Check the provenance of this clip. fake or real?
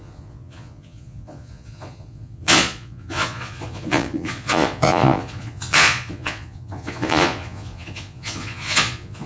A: fake